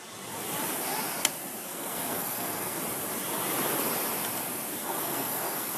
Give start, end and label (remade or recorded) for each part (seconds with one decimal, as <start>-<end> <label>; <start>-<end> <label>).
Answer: 0.0-1.7 recorded; 1.7-2.8 remade; 2.8-4.8 recorded; 4.8-5.8 remade